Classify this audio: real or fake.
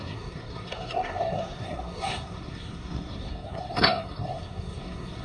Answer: fake